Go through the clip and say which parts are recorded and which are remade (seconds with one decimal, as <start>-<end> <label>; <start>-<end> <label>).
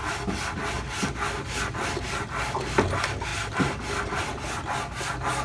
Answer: 0.0-5.4 recorded